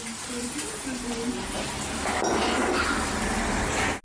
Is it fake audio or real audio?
real